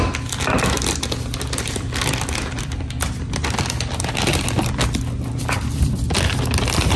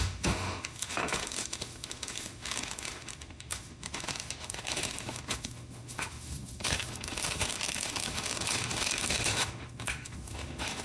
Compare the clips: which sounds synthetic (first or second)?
second